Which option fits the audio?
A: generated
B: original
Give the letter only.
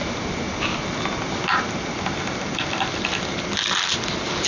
B